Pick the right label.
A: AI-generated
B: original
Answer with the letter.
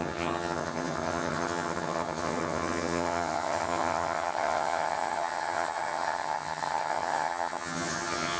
A